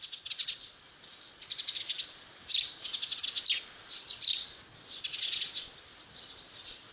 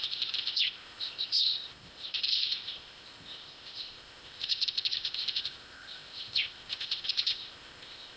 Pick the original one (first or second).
first